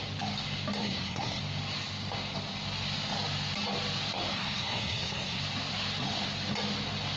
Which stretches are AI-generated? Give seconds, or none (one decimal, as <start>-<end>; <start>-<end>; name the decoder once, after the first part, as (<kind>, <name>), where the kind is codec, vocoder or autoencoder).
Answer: 0.8-1.4 (codec, SNAC); 4.3-5.4